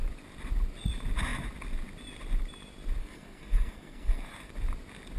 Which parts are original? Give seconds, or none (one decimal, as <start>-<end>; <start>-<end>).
0.0-3.0; 4.5-5.2